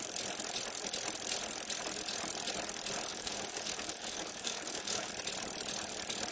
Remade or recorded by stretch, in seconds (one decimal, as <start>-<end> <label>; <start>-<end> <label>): 0.0-3.1 recorded; 3.1-5.1 remade; 5.1-6.3 recorded